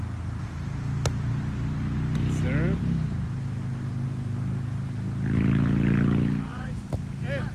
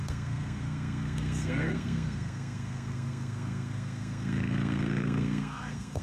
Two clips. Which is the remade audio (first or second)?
second